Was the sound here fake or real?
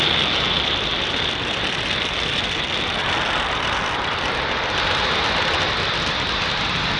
real